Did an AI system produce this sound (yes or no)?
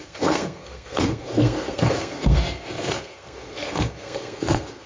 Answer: yes